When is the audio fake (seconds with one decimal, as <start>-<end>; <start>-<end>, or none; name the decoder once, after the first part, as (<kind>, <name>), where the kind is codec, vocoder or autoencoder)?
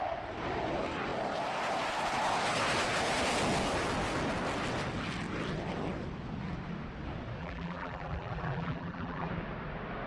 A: 7.4-9.3 (vocoder, BigVGAN v2)